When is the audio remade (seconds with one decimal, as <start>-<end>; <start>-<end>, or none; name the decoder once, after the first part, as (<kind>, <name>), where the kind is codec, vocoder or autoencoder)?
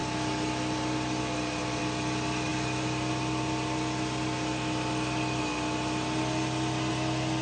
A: none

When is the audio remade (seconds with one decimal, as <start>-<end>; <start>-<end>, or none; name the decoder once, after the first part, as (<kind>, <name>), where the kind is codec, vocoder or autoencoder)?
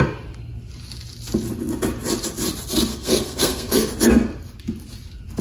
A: 2.9-3.9 (codec, SNAC)